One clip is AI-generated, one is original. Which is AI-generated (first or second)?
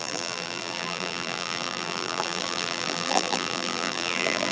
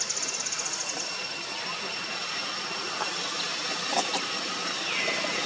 first